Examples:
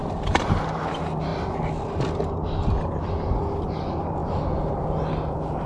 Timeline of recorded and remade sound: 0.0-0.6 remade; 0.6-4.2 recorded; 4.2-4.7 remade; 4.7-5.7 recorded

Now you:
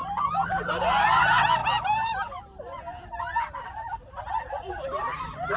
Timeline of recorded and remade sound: 0.0-0.6 remade; 0.6-1.6 recorded; 1.6-4.2 remade; 4.2-5.6 recorded